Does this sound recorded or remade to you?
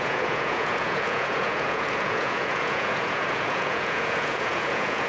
remade